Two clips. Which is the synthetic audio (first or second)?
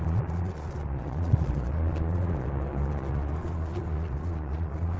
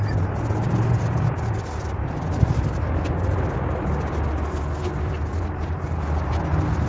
first